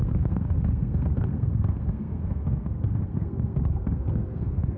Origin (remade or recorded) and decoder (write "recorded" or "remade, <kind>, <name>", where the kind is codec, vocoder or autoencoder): remade, codec, SNAC